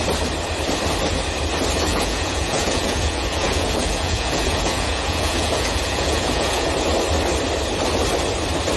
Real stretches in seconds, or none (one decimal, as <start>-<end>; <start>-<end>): 0.0-1.9; 6.7-8.8